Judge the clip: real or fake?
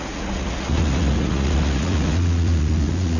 fake